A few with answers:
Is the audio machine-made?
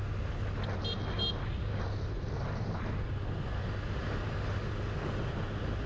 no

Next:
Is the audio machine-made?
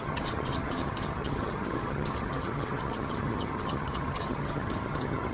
yes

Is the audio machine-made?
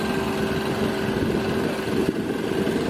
no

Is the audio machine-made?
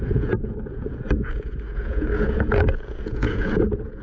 yes